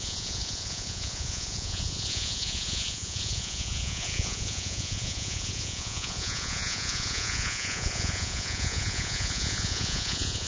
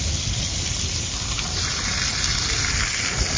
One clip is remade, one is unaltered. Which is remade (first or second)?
first